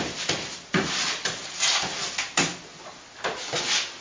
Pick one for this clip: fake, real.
real